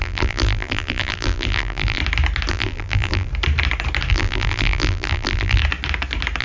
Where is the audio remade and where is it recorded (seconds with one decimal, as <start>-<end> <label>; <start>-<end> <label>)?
0.0-2.0 remade; 2.0-2.5 recorded; 2.5-3.3 remade; 3.3-4.1 recorded; 4.1-5.6 remade; 5.6-6.4 recorded